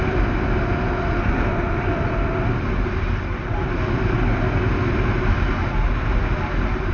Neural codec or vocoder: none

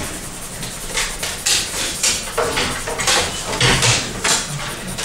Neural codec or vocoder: none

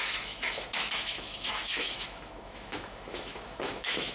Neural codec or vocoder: autoencoder, DAC-VAE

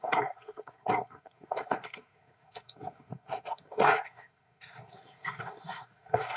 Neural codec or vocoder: codec, SNAC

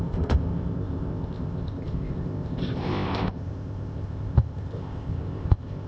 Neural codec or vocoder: codec, ZipCodec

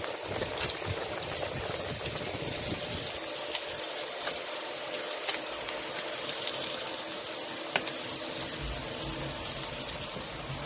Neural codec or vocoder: none